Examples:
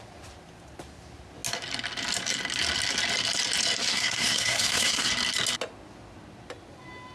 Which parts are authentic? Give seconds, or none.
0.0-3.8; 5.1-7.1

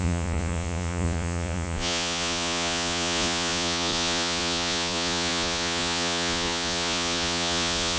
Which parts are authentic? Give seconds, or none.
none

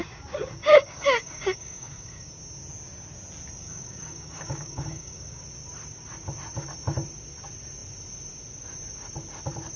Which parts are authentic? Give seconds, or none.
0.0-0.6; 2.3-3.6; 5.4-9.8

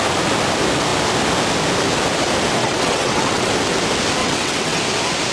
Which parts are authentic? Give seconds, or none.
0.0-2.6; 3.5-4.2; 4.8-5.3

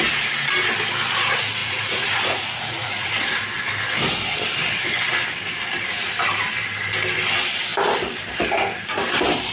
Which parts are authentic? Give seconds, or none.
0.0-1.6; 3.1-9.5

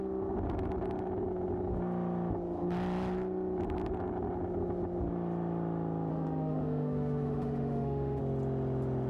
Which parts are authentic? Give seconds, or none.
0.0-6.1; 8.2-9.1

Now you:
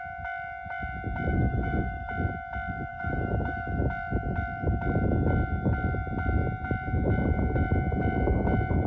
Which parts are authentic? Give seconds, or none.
0.0-1.3; 2.1-2.9; 3.8-8.9